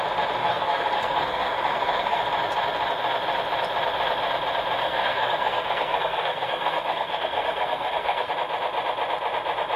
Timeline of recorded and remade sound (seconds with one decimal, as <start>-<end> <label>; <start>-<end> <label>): 0.0-0.4 recorded; 0.4-2.2 remade; 2.2-4.8 recorded; 4.8-8.3 remade; 8.3-9.8 recorded